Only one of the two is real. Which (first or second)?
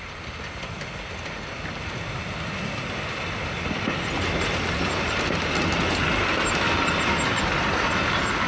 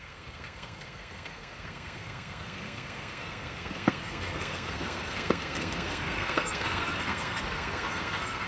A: first